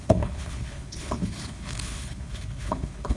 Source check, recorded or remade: remade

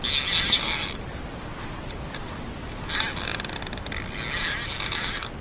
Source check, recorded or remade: recorded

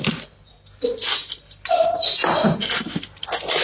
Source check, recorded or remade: recorded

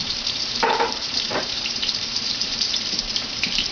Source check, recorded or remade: remade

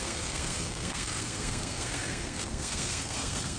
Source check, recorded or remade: remade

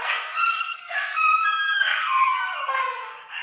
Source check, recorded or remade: remade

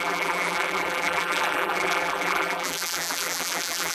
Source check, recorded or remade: remade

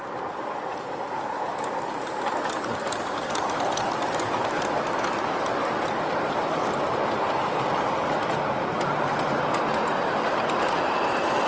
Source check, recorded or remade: recorded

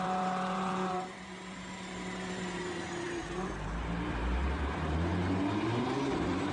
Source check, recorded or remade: remade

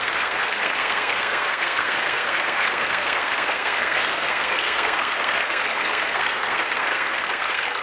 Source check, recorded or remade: remade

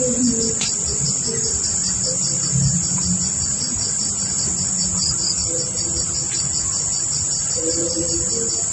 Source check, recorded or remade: recorded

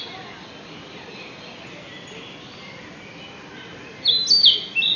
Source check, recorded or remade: recorded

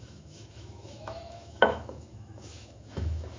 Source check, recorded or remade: remade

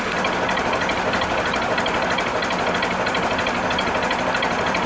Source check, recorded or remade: recorded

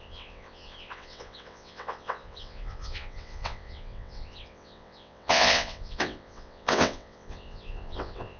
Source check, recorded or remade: remade